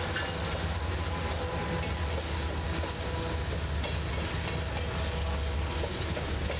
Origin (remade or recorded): recorded